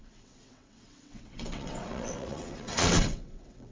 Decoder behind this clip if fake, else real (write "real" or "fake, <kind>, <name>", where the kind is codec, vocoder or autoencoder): fake, vocoder, WaveNeXt